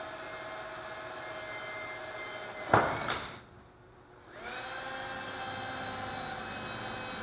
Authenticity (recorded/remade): recorded